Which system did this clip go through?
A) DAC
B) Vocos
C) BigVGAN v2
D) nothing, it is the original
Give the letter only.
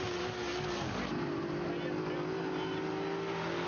D